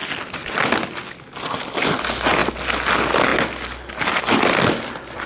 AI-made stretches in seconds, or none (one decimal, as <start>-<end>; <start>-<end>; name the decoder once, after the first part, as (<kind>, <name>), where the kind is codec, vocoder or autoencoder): none